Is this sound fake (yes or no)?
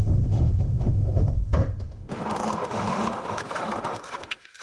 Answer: yes